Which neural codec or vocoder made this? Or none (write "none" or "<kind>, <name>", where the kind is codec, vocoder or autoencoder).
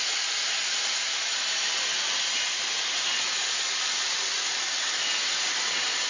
none